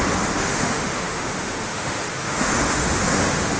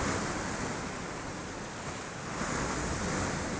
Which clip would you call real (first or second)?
second